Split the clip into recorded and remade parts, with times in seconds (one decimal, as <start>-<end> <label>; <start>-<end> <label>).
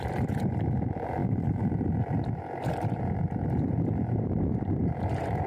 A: 0.0-5.5 remade